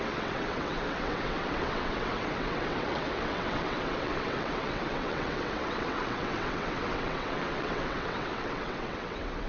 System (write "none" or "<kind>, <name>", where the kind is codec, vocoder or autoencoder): vocoder, WaveNeXt